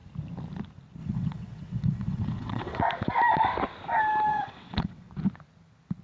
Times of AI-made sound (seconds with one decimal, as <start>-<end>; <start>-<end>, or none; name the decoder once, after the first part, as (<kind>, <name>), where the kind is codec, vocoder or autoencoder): 1.0-2.8 (vocoder, WaveNeXt); 4.3-5.1